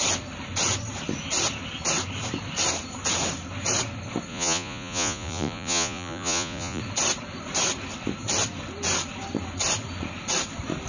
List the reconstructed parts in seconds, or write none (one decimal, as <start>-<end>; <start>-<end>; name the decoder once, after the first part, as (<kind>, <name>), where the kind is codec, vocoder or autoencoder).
4.3-6.8 (vocoder, Vocos)